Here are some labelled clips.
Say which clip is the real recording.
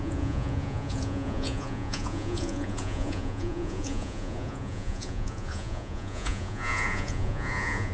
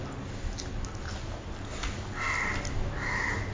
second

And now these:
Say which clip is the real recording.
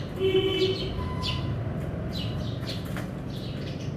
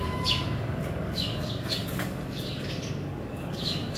first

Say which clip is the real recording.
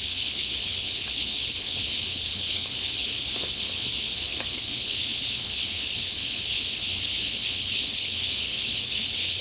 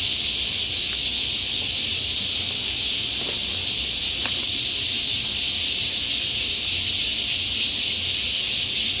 second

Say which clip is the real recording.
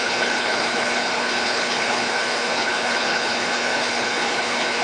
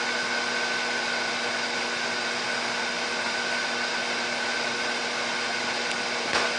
second